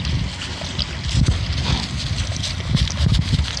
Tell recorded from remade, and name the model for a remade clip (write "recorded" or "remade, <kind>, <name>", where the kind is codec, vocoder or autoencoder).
recorded